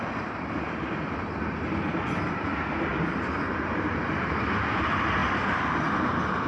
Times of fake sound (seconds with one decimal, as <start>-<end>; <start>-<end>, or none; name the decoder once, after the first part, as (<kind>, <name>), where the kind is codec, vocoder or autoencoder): none